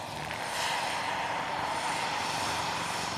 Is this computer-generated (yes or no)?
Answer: yes